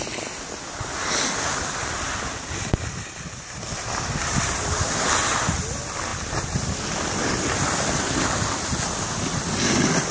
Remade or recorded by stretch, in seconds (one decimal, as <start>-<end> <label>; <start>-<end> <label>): 0.0-10.1 recorded